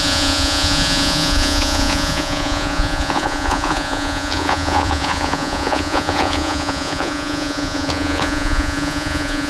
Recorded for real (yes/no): no